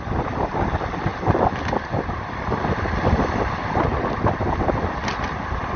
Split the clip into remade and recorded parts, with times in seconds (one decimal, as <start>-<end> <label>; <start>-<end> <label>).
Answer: 0.0-5.8 recorded